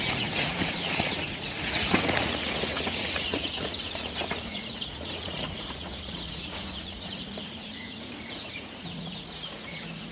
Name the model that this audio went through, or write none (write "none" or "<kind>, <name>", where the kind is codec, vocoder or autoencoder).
vocoder, Vocos